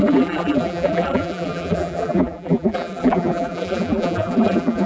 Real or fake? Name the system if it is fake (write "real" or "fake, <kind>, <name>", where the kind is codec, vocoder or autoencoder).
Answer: fake, vocoder, BigVGAN v2